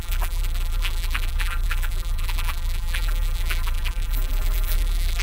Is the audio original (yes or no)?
no